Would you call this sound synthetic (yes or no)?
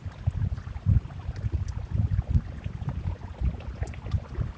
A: no